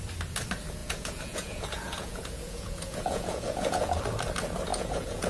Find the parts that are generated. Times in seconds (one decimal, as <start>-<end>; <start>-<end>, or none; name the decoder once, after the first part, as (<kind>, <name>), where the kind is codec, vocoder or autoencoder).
0.8-4.0 (vocoder, Vocos); 4.7-5.3